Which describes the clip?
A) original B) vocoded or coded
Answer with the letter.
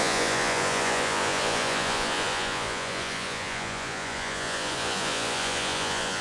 B